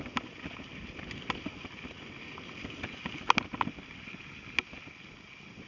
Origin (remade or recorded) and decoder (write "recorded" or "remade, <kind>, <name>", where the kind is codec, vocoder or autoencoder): recorded